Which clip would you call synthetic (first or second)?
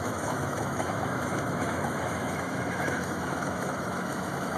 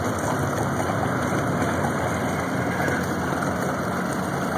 first